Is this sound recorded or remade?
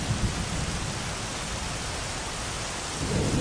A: recorded